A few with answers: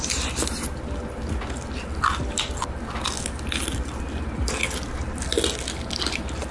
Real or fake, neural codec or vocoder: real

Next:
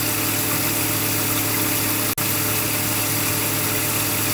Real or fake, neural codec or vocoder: real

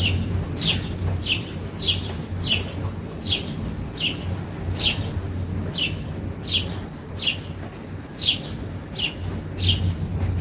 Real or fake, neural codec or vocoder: real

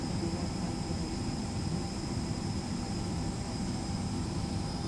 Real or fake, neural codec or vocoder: fake, vocoder, BigVGAN v2